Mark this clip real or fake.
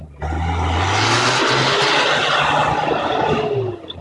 real